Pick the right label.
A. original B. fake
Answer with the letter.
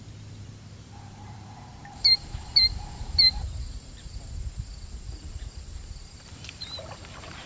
B